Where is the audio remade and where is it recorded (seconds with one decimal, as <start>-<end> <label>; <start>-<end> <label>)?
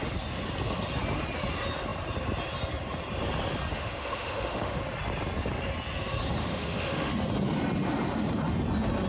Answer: 0.0-3.7 recorded; 3.7-4.8 remade; 4.8-6.4 recorded; 6.4-7.1 remade; 7.1-9.1 recorded